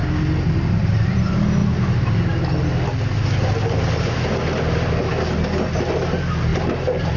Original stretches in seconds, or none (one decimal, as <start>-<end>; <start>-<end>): 0.0-0.8; 1.6-5.8